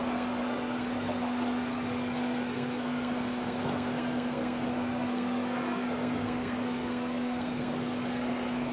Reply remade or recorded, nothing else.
remade